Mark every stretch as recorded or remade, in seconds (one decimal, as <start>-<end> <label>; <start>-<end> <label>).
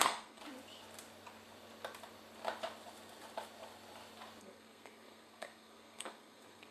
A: 0.0-0.4 remade; 0.4-4.4 recorded; 4.4-6.7 remade